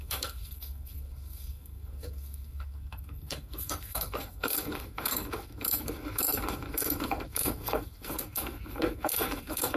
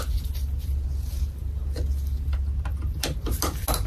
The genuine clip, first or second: second